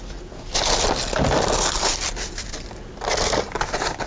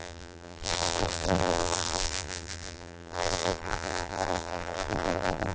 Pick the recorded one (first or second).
first